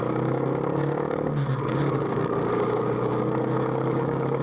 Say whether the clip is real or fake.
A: fake